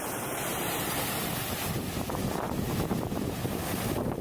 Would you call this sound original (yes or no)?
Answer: no